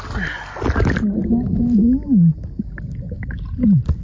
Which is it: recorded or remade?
recorded